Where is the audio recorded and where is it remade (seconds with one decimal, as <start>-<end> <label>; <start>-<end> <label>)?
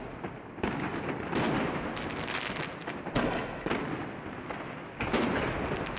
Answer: 0.0-0.9 recorded; 0.9-2.4 remade; 2.4-6.0 recorded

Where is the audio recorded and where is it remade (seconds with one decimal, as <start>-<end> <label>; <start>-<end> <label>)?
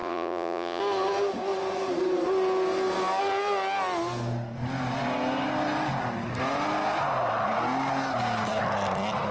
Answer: 0.0-0.8 remade; 0.8-9.3 recorded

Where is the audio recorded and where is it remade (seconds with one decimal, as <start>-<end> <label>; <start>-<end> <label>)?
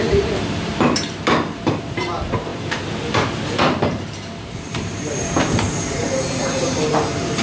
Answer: 0.0-7.4 remade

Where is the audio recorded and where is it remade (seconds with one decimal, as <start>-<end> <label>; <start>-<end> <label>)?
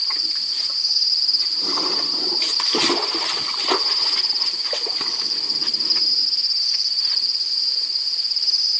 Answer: 0.0-8.8 recorded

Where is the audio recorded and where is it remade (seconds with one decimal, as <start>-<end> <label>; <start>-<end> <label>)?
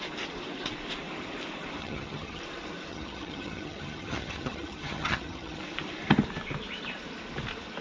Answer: 0.0-1.8 recorded; 1.8-2.4 remade; 2.4-2.9 recorded; 2.9-5.6 remade; 5.6-7.8 recorded